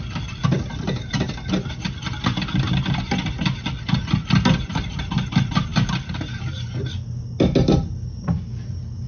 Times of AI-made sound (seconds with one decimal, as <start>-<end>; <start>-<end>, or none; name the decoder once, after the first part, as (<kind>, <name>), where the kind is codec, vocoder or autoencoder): none